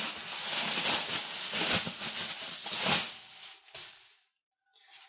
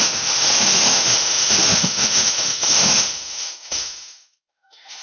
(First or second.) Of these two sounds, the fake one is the second